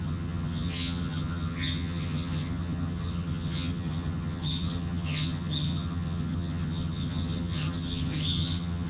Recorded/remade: remade